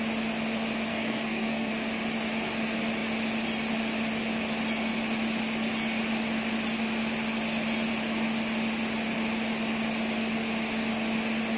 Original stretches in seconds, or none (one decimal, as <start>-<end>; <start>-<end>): 0.0-0.9; 1.7-11.6